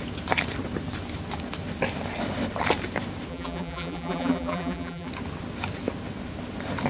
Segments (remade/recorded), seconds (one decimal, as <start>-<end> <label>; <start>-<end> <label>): 0.0-3.3 recorded; 3.3-5.1 remade; 5.1-6.9 recorded